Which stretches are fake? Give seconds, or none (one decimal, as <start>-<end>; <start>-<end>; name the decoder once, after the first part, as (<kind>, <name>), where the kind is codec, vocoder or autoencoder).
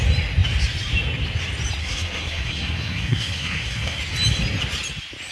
1.8-4.0 (codec, SNAC)